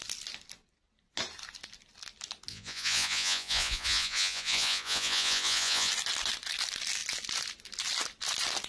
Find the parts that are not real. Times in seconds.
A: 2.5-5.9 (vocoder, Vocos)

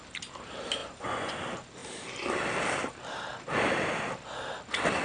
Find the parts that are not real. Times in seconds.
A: 0.8-1.3 (vocoder, Vocos)

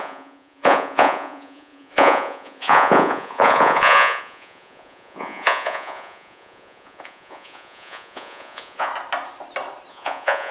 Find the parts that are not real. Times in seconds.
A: 0.0-8.9 (vocoder, Vocos); 9.9-10.5